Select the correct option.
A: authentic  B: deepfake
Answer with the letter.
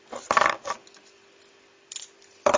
A